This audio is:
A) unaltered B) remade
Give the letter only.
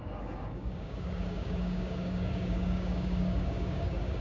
B